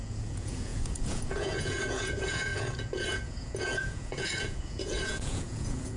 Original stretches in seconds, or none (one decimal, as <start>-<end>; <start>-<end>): none